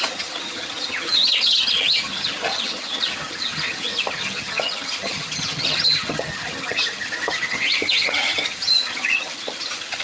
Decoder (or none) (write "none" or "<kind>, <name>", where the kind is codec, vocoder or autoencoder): vocoder, HiFi-GAN